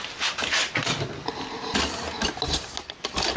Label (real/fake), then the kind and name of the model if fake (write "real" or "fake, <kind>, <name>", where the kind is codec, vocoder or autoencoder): real